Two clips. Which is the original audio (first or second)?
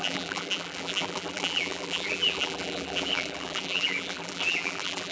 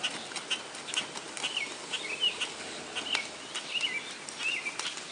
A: second